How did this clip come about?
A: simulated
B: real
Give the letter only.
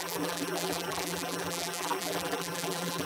A